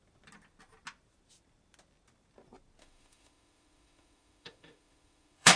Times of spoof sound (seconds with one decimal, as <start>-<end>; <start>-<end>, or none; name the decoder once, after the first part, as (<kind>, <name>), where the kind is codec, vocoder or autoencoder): 2.8-5.6 (autoencoder, DAC-VAE)

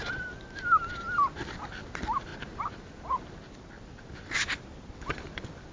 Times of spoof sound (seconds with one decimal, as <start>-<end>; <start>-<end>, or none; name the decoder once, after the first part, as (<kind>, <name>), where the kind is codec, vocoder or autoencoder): none

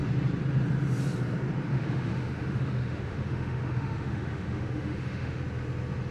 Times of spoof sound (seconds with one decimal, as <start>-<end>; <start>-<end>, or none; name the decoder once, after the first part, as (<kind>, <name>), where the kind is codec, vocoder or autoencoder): 1.7-5.4 (autoencoder, DAC-VAE)

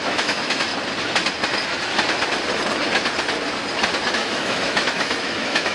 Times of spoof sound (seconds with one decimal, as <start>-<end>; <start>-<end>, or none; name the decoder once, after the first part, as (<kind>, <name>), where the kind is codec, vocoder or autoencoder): 0.0-0.7 (autoencoder, DAC-VAE); 4.1-5.7

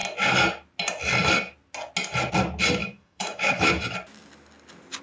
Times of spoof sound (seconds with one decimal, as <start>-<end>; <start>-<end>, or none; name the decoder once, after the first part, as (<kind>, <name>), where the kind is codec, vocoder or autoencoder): 2.8-3.7 (autoencoder, DAC-VAE)

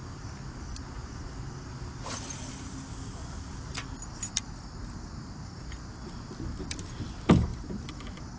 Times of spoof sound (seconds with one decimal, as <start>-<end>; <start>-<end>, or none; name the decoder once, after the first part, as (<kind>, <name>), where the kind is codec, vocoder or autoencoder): none

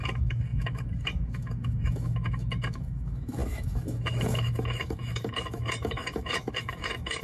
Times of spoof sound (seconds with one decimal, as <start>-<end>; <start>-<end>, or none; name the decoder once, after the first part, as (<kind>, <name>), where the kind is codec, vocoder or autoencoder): 0.0-7.2 (autoencoder, DAC-VAE)